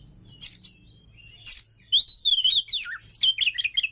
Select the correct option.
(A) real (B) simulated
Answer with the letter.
A